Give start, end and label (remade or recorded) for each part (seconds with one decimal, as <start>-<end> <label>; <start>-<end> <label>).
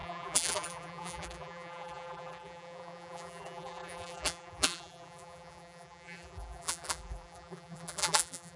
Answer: 0.0-8.6 remade